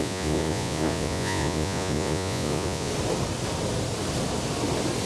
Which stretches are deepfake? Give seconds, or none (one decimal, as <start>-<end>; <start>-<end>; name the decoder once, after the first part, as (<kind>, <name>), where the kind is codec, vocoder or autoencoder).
0.0-2.9 (vocoder, Vocos)